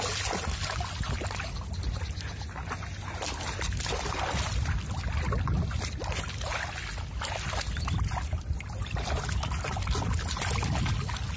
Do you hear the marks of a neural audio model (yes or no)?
no